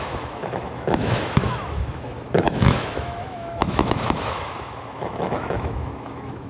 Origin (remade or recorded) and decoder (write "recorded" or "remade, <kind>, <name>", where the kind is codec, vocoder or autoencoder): remade, autoencoder, DAC-VAE